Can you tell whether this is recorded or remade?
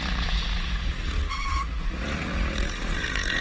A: remade